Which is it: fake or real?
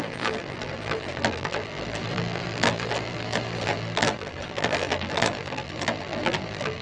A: fake